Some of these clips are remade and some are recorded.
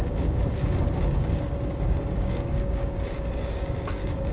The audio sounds remade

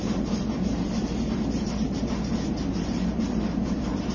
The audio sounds remade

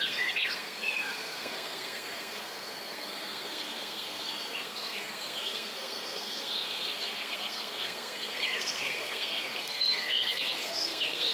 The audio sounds remade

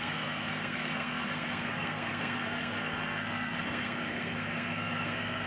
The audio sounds remade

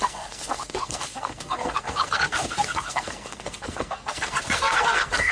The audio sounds remade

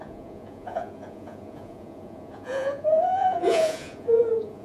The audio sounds remade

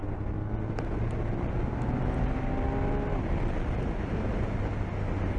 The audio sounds recorded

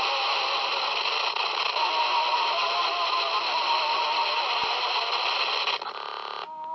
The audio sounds recorded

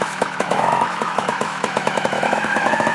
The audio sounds remade